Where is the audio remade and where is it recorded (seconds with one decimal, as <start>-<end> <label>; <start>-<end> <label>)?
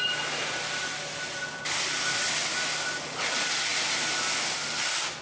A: 0.0-5.2 recorded